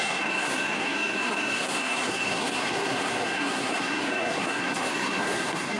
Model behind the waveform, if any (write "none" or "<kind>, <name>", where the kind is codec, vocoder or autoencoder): codec, SNAC